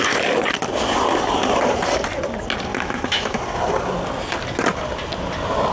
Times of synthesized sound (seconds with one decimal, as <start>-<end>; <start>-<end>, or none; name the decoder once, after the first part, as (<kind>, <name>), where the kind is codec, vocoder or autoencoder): 2.7-3.4 (autoencoder, DAC-VAE)